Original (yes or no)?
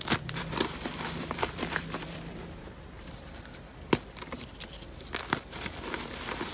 no